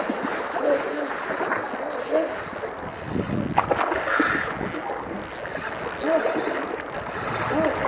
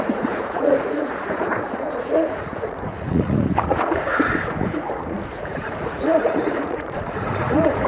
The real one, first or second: first